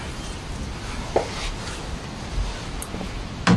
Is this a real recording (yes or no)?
yes